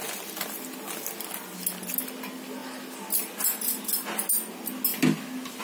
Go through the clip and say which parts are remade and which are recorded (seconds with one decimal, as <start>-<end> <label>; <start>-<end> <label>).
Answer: 0.0-5.6 recorded

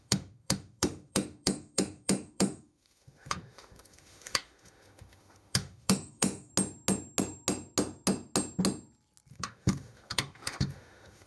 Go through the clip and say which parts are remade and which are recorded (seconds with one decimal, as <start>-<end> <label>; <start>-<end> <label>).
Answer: 0.0-6.5 remade; 6.5-9.3 recorded; 9.3-11.3 remade

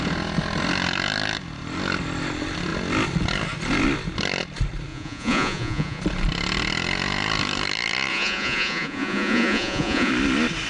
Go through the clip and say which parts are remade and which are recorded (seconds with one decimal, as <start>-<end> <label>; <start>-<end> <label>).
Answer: 0.0-4.9 recorded; 4.9-6.0 remade; 6.0-8.1 recorded; 8.1-10.1 remade; 10.1-10.7 recorded

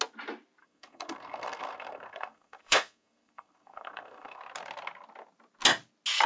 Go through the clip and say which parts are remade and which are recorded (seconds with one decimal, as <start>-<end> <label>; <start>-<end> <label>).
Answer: 0.0-0.6 recorded; 0.6-4.4 remade; 4.4-6.3 recorded

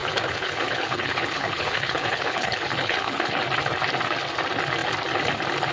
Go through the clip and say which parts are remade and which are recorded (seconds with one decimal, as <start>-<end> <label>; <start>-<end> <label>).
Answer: 0.0-3.4 remade; 3.4-5.7 recorded

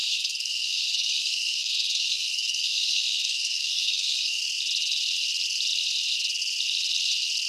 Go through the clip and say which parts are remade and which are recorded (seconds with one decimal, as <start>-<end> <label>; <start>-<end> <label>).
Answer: 0.0-4.4 remade; 4.4-7.5 recorded

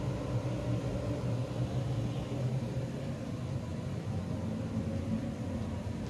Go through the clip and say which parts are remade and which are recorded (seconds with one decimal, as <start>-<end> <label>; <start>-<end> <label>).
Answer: 0.0-6.1 recorded

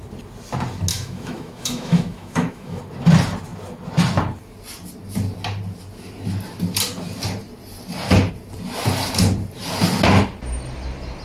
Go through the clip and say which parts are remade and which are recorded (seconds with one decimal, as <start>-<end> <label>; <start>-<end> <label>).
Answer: 0.0-0.9 recorded; 0.9-2.8 remade; 2.8-11.2 recorded